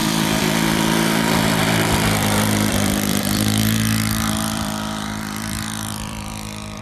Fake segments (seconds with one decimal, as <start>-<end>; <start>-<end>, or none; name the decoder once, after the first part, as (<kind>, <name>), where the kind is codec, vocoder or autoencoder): 0.0-6.8 (vocoder, BigVGAN v2)